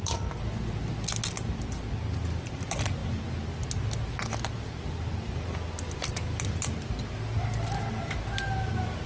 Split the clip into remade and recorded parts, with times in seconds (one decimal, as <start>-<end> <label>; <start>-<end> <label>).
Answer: 0.0-9.1 recorded